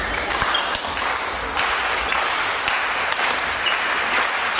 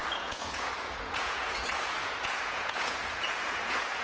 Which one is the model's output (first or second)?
second